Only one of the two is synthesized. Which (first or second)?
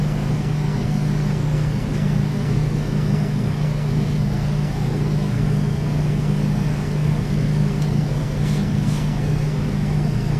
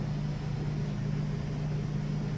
first